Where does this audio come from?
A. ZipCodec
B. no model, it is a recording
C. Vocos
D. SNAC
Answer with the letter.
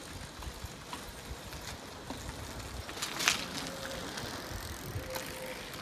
B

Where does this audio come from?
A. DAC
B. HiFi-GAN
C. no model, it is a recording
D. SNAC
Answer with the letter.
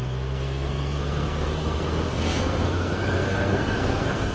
D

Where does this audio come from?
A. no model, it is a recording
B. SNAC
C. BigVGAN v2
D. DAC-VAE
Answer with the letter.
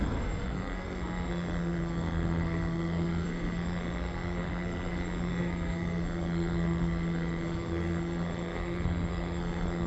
B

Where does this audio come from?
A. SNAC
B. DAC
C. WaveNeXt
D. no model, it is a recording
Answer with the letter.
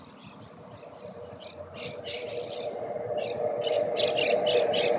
D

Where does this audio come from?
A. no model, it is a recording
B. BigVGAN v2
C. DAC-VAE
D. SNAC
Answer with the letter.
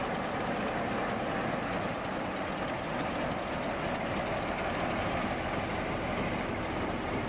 A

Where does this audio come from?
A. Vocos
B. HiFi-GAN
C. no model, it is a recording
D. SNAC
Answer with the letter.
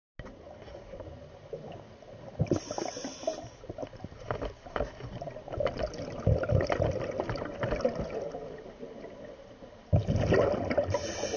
C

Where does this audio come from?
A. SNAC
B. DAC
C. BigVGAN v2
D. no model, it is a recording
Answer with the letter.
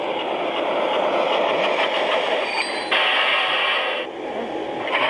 D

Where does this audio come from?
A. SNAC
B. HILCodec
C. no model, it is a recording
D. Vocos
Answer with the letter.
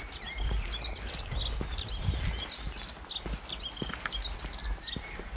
C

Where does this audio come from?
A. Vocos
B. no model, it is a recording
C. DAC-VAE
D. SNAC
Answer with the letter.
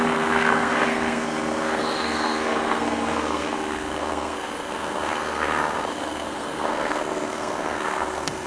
D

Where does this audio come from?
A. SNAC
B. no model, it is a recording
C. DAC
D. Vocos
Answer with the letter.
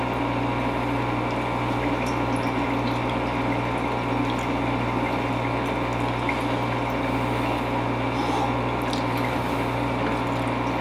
B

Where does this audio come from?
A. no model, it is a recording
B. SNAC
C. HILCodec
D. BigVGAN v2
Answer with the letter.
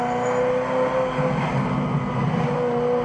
A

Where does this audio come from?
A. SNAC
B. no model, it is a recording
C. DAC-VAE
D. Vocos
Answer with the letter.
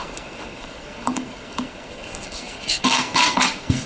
A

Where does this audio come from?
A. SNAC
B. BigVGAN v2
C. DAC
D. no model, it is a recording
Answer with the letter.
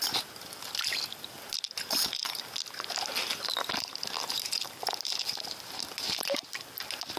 D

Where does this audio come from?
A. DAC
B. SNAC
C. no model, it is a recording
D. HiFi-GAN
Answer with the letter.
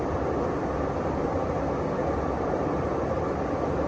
C